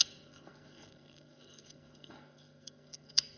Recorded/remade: remade